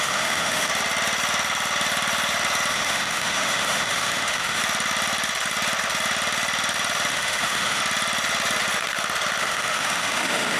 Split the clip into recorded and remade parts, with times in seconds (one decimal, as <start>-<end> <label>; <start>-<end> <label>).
0.0-0.7 remade; 0.7-2.7 recorded; 2.7-4.6 remade; 4.6-7.1 recorded; 7.1-7.8 remade; 7.8-9.4 recorded; 9.4-10.6 remade